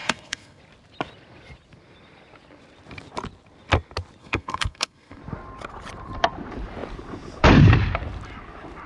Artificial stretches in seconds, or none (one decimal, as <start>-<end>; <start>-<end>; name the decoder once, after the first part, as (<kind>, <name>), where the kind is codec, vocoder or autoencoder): 0.0-0.6 (codec, SNAC); 4.2-5.2